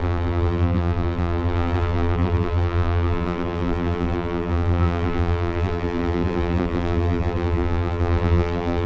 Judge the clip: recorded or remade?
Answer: remade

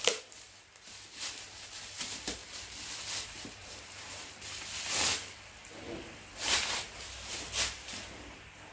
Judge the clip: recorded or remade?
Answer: remade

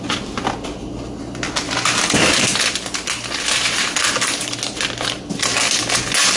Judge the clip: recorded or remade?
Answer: recorded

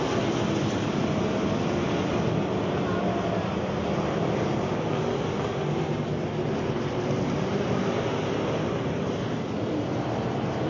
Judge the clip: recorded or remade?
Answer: remade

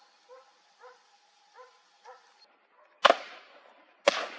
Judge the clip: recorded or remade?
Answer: recorded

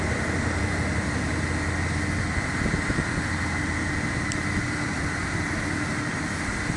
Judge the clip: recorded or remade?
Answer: recorded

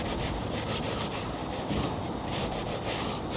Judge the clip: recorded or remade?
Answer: remade